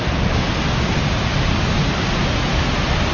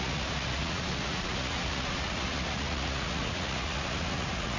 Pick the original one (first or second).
first